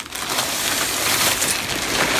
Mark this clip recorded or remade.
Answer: recorded